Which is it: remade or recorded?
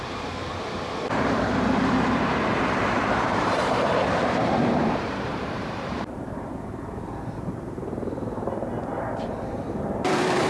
remade